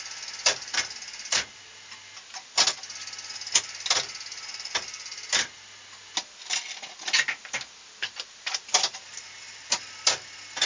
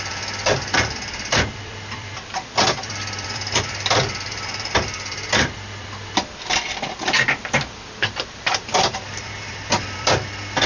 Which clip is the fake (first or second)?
second